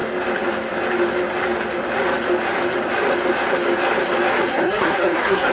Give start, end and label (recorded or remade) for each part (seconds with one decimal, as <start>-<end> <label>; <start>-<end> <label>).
0.0-4.5 recorded; 4.5-5.5 remade